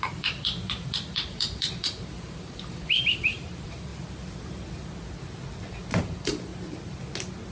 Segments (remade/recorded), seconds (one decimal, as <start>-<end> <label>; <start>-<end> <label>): 0.0-3.9 remade; 3.9-6.0 recorded; 6.0-6.5 remade; 6.5-7.5 recorded